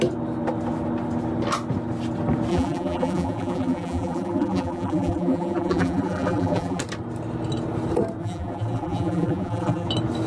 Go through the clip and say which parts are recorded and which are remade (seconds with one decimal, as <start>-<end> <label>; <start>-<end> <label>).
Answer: 0.0-2.5 recorded; 2.5-6.8 remade; 6.8-8.2 recorded; 8.2-9.9 remade; 9.9-10.3 recorded